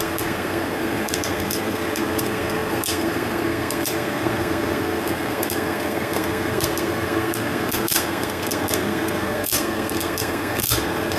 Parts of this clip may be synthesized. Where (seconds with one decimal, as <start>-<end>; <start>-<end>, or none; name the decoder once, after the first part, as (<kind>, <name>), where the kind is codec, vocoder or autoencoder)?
0.0-11.2 (codec, SNAC)